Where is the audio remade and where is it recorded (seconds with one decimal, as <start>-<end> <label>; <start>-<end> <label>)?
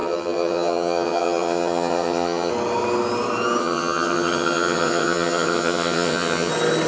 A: 0.0-2.5 remade; 2.5-3.6 recorded; 3.6-6.5 remade; 6.5-6.9 recorded